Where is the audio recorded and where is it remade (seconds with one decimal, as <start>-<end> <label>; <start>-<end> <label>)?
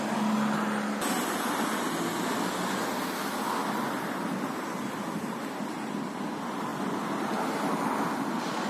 0.0-8.7 recorded